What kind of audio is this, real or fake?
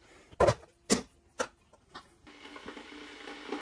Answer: real